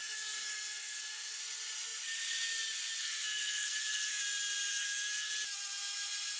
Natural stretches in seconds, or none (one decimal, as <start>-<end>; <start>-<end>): 1.4-3.0; 4.2-4.7; 5.3-6.4